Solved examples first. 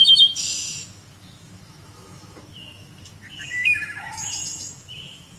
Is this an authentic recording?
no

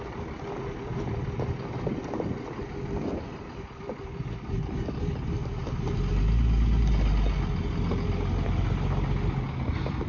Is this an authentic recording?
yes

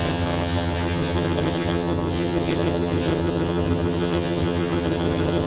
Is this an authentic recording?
no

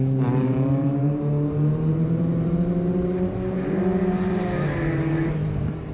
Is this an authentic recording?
no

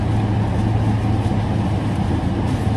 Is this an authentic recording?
yes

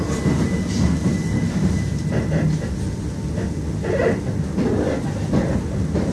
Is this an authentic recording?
yes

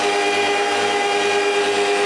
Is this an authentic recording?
yes